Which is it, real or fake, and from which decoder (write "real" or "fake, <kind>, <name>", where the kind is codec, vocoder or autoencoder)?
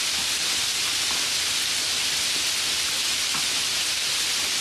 real